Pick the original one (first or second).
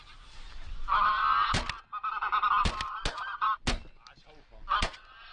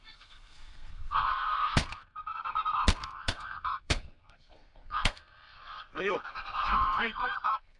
first